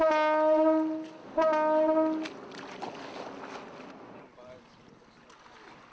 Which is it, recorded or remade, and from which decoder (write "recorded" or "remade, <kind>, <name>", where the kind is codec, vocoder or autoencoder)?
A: recorded